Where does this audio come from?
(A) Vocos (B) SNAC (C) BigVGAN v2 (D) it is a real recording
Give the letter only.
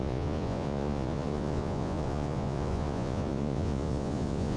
A